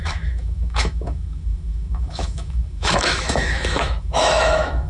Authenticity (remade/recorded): remade